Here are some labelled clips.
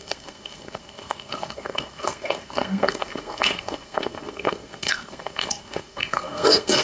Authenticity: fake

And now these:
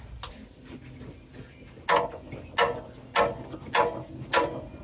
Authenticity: real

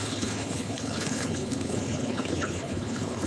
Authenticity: fake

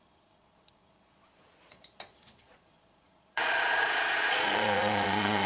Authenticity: fake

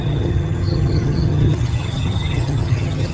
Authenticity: fake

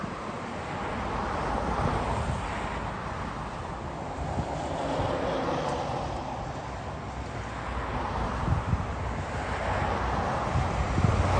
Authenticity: real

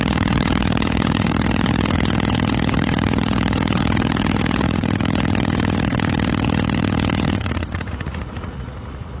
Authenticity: fake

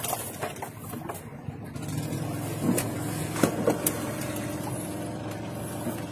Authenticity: real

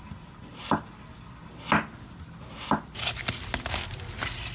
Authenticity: real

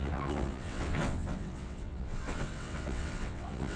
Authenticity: fake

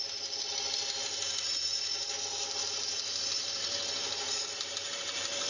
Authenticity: real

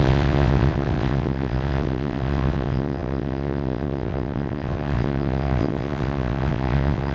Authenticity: fake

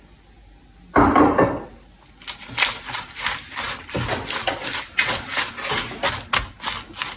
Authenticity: real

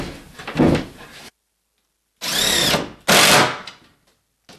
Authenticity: real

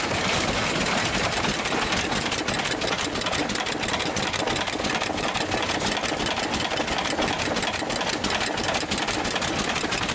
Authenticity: real